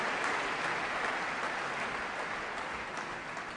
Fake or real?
real